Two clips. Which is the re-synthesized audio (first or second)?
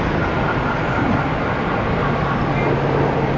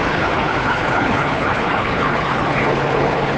second